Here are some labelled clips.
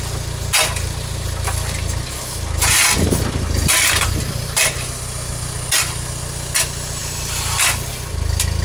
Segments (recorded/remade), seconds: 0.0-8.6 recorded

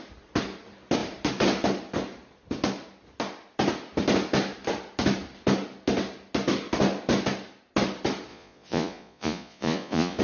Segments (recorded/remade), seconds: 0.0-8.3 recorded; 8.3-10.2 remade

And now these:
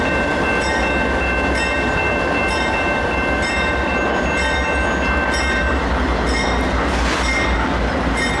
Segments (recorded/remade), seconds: 0.0-8.4 recorded

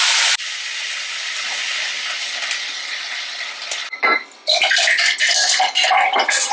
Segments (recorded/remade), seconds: 0.0-6.5 recorded

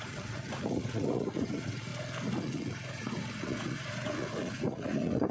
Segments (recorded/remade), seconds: 0.0-1.9 remade; 1.9-2.4 recorded; 2.4-5.3 remade

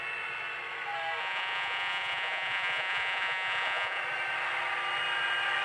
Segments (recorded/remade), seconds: 0.0-1.2 recorded; 1.2-4.0 remade; 4.0-5.6 recorded